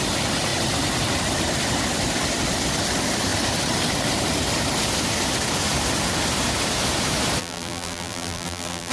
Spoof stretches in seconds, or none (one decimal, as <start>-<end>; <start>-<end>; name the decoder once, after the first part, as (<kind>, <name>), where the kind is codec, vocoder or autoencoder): 7.4-8.9 (vocoder, BigVGAN v2)